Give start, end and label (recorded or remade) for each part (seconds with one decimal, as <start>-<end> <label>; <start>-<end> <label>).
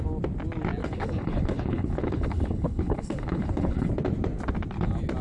0.0-0.8 recorded; 0.8-3.9 remade; 3.9-5.2 recorded